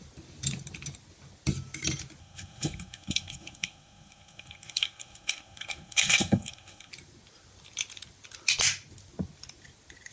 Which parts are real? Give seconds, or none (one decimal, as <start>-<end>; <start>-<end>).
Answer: 0.0-2.2; 6.9-10.1